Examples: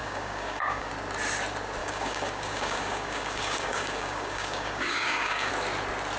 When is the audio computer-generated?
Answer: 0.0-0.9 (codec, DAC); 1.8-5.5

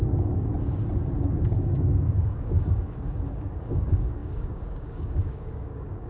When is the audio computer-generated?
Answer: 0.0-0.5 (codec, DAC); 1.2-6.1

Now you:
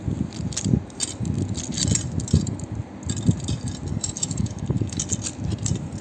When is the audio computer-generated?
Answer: 3.9-5.0 (codec, DAC)

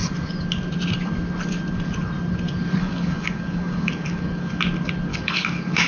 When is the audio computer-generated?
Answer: 2.8-4.6 (codec, DAC); 5.1-5.9

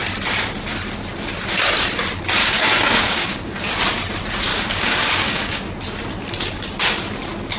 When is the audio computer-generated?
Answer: 2.4-3.5 (codec, DAC); 4.5-5.7